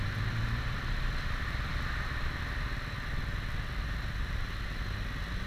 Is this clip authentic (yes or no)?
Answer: yes